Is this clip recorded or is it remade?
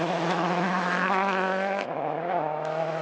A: remade